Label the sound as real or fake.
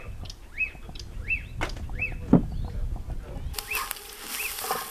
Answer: real